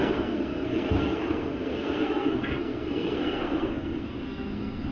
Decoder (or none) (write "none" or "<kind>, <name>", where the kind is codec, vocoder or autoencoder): codec, SNAC